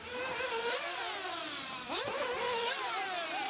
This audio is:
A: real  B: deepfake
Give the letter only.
A